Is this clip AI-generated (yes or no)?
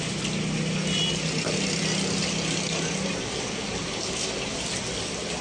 no